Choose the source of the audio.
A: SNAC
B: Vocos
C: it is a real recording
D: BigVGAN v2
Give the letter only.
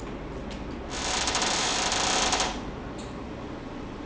C